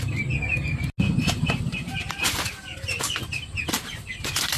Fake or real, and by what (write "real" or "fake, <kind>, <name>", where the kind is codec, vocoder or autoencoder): real